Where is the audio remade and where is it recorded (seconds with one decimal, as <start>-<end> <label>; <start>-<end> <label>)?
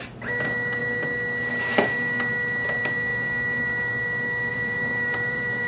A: 0.0-4.5 recorded; 4.5-5.7 remade